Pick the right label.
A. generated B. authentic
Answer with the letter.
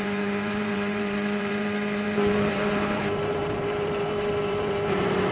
A